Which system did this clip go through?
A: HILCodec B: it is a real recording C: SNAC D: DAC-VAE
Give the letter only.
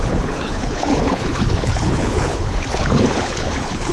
A